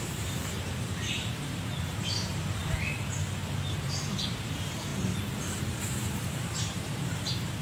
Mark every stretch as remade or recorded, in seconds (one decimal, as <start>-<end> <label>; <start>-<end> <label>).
0.0-2.6 remade; 2.6-3.7 recorded; 3.7-4.9 remade; 4.9-5.6 recorded; 5.6-7.6 remade